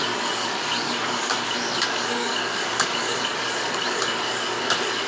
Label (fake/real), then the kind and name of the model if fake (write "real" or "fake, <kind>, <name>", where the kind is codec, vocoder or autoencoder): fake, codec, DAC